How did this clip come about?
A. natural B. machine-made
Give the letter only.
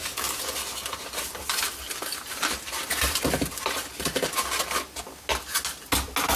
A